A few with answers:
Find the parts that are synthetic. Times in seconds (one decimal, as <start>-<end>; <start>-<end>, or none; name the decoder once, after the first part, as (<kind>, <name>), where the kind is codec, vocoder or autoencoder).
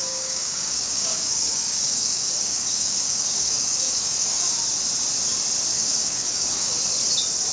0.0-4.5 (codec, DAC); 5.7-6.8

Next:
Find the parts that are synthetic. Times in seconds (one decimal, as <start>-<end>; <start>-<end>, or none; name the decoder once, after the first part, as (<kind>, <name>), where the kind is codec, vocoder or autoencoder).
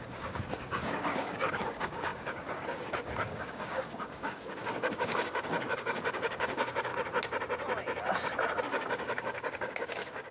0.0-6.9 (codec, DAC); 8.6-10.3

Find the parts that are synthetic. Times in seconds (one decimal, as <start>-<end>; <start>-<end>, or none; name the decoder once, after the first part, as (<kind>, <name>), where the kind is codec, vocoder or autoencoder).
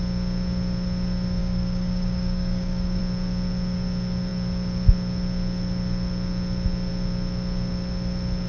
1.4-3.0 (codec, DAC)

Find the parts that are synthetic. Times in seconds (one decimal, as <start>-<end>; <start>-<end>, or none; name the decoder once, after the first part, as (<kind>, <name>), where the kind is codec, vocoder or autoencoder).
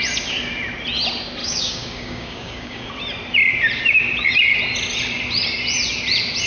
1.4-2.9 (codec, DAC)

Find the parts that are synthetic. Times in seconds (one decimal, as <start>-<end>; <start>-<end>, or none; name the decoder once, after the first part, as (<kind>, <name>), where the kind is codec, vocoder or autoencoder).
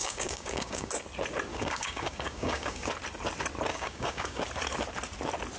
0.0-0.9 (codec, DAC); 1.5-2.9; 3.7-4.4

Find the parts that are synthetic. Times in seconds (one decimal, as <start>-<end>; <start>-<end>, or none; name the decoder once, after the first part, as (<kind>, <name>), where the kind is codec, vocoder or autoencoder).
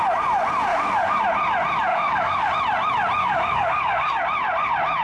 0.7-1.2 (codec, DAC); 1.9-2.5; 3.2-4.1